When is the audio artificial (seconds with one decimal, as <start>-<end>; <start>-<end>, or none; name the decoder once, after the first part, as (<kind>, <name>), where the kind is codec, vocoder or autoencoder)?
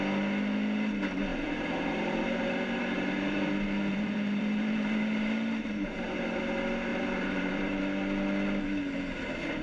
1.3-3.5 (vocoder, BigVGAN v2); 3.9-6.4; 6.9-7.8